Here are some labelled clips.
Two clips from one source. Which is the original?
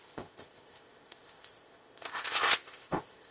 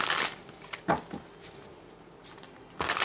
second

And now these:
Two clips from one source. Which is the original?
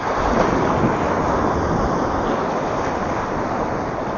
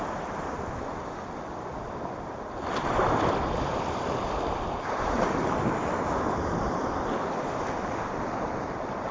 first